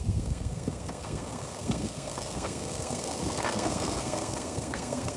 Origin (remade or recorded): remade